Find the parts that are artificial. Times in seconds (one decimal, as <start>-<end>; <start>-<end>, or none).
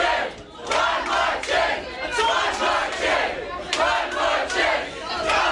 none